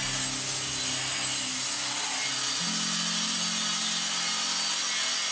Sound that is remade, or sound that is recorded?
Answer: recorded